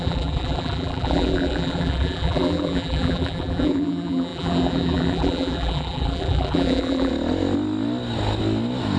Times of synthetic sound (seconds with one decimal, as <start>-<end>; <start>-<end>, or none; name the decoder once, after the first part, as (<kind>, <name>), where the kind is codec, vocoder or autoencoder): 0.0-7.1 (vocoder, BigVGAN v2)